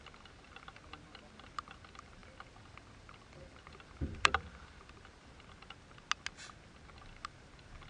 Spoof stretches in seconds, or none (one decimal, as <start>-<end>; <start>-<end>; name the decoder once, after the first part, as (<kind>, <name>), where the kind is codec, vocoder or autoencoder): 2.2-5.3 (vocoder, BigVGAN v2)